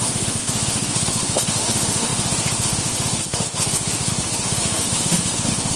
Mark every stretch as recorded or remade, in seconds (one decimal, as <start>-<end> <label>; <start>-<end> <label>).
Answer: 0.0-5.8 remade